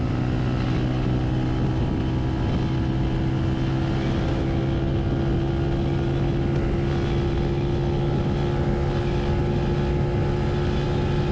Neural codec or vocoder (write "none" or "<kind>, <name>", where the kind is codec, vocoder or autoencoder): none